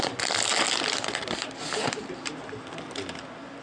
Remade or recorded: recorded